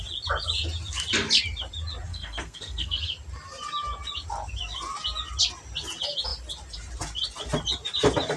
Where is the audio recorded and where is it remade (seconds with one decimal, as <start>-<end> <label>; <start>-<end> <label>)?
0.0-2.1 recorded; 2.1-3.0 remade; 3.0-8.4 recorded